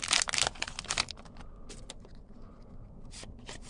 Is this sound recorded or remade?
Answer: recorded